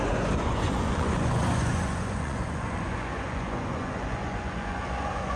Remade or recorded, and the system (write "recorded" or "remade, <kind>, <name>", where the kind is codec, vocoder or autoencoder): remade, vocoder, Vocos